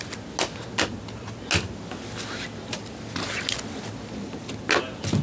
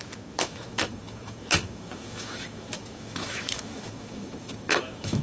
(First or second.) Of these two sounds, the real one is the first